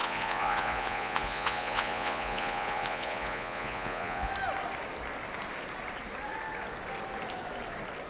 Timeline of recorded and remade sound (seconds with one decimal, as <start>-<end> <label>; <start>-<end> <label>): 0.0-4.3 remade; 4.3-8.1 recorded